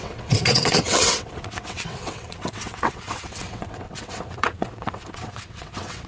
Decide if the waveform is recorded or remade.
remade